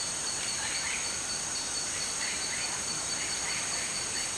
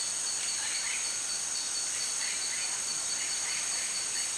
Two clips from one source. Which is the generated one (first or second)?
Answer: first